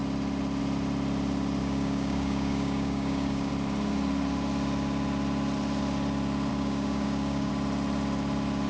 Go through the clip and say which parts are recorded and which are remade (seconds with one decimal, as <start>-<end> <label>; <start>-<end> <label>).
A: 0.0-1.6 recorded; 1.6-3.5 remade; 3.5-6.5 recorded; 6.5-7.5 remade; 7.5-8.7 recorded